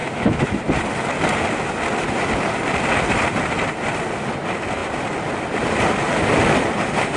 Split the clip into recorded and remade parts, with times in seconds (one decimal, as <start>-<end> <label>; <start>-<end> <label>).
0.0-0.6 remade; 0.6-7.2 recorded